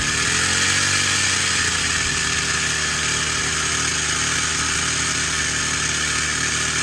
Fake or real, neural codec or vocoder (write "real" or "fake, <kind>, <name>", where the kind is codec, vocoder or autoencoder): real